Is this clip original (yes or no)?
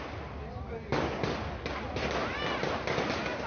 yes